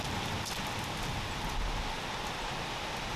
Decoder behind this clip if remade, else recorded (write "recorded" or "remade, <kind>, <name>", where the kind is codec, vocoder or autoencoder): recorded